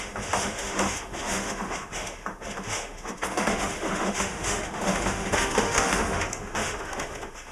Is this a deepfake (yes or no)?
yes